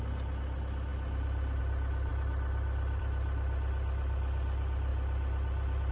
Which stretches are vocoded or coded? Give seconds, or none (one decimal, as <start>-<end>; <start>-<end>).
0.0-0.9; 1.6-5.9